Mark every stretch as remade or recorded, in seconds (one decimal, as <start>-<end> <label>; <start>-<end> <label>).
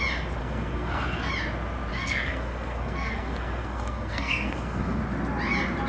0.0-0.4 recorded; 0.4-1.3 remade; 1.3-1.9 recorded; 1.9-5.0 remade; 5.0-5.9 recorded